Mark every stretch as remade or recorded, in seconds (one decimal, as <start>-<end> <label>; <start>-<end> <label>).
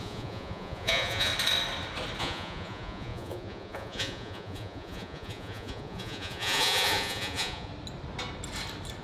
0.0-1.3 remade; 1.3-2.2 recorded; 2.2-7.7 remade; 7.7-9.0 recorded